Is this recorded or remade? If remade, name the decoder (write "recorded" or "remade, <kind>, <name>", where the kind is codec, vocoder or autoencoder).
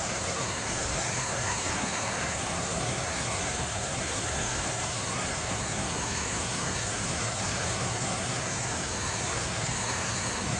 remade, codec, SNAC